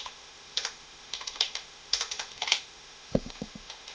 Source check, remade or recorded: remade